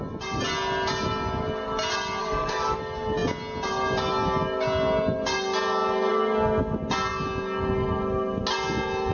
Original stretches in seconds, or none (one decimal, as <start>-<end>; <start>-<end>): 0.0-2.2; 2.8-9.1